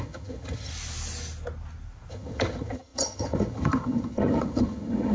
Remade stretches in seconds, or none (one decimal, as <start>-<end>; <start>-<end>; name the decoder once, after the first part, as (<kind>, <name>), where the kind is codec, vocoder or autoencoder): 0.0-0.7 (vocoder, HiFi-GAN); 2.1-5.1